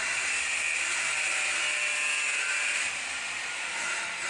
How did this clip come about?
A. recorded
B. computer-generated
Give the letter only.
A